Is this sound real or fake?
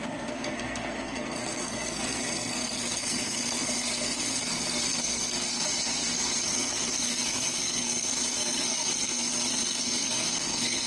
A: fake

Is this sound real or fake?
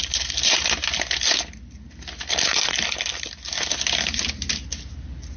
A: real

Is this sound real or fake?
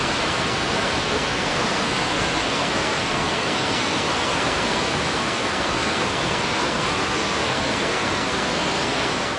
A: fake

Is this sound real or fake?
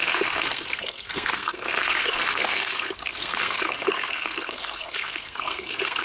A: fake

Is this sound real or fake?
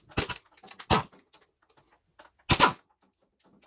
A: real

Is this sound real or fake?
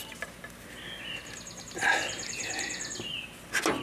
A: real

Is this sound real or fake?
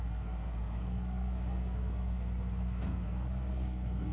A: fake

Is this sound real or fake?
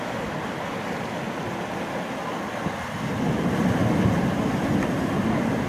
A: real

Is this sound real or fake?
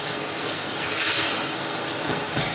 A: fake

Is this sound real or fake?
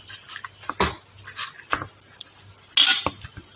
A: real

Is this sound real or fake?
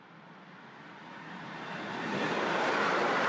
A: real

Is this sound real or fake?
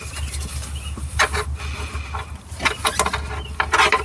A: real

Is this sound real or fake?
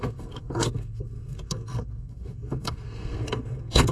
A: fake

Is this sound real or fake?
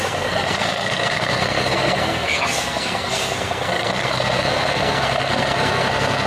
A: fake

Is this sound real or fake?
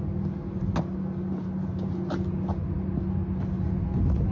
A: real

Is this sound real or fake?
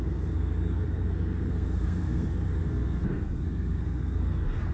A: fake